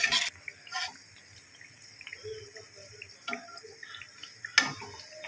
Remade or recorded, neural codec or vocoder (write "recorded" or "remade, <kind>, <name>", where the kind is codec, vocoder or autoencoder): recorded